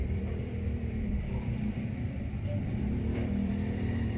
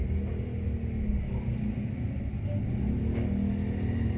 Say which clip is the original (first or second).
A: second